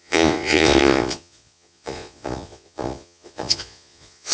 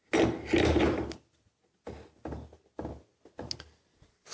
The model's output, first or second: first